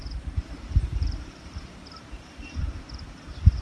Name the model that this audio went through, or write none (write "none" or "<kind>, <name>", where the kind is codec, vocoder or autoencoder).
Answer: vocoder, BigVGAN v2